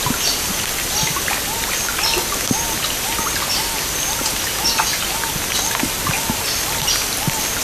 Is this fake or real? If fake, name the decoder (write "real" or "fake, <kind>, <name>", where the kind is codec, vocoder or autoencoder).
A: real